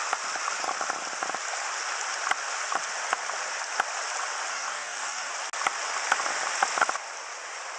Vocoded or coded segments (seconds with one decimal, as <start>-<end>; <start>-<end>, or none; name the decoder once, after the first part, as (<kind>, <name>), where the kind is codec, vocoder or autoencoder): 4.5-5.3 (codec, DAC)